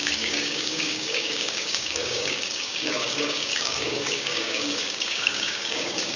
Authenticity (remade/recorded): remade